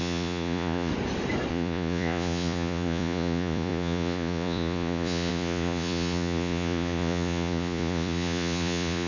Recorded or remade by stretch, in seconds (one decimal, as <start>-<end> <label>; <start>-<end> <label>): 0.0-0.9 remade; 0.9-1.5 recorded; 1.5-9.1 remade